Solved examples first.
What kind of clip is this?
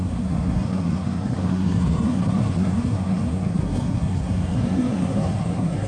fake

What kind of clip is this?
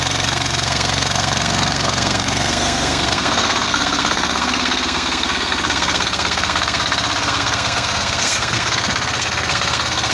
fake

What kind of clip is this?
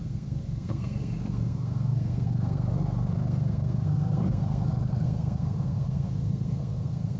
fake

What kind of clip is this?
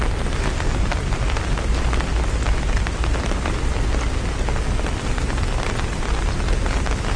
real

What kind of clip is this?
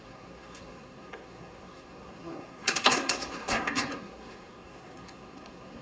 fake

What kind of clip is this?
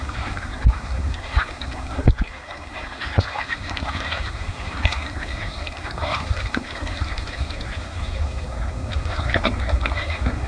fake